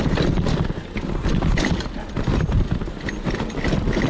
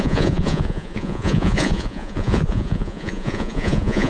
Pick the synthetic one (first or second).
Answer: second